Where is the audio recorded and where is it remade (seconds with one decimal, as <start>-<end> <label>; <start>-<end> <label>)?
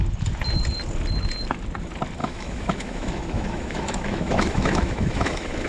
0.0-2.2 recorded; 2.2-5.7 remade